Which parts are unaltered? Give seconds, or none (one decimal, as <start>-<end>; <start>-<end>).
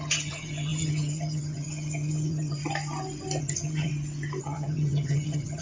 2.6-3.4; 3.9-4.4